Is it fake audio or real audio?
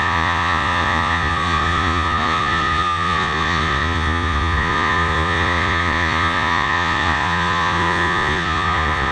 fake